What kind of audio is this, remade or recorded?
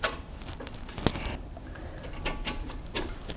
recorded